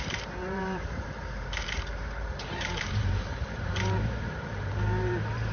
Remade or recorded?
remade